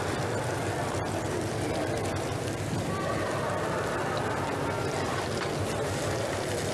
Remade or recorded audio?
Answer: recorded